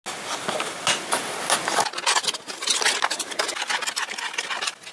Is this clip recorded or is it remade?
recorded